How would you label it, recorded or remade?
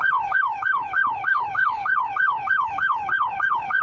remade